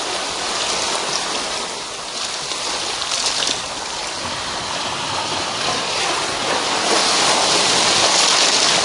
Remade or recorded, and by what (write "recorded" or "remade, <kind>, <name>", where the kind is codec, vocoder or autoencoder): recorded